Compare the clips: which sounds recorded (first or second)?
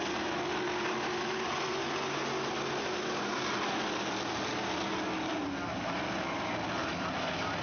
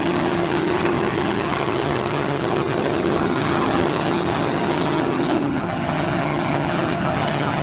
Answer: first